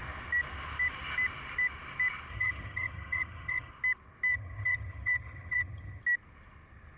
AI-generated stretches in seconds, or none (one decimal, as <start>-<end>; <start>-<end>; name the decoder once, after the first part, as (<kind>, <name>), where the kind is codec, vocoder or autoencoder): 2.3-3.7 (vocoder, HiFi-GAN); 4.3-6.0